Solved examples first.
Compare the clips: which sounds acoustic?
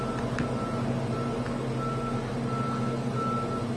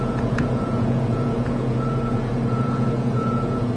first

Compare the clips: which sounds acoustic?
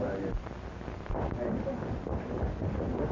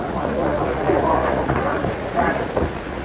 first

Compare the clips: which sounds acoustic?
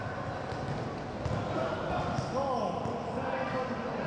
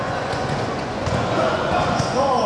first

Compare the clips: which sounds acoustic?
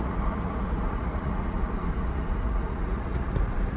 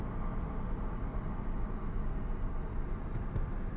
second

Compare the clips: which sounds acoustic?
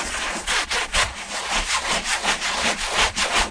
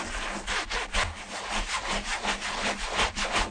second